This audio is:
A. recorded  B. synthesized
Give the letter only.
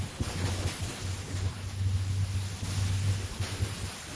A